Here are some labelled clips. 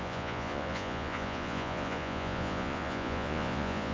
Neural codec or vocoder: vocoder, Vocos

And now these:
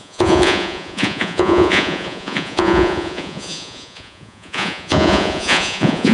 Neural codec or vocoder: vocoder, Vocos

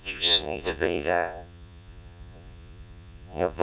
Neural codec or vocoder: vocoder, Vocos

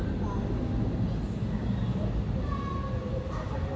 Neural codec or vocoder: none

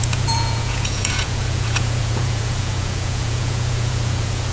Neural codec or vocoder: vocoder, Vocos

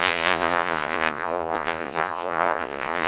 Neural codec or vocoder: vocoder, Vocos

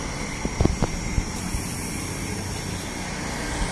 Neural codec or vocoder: none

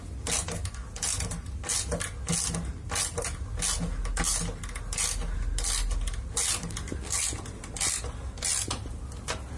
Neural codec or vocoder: none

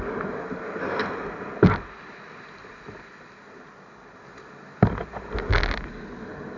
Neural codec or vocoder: none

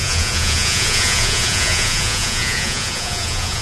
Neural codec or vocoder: vocoder, Vocos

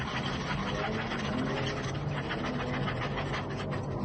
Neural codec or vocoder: none